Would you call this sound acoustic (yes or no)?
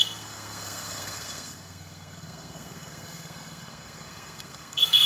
no